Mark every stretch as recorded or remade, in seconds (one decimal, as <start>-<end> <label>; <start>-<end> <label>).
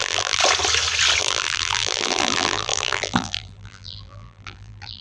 0.0-0.4 remade; 0.4-1.2 recorded; 1.2-5.0 remade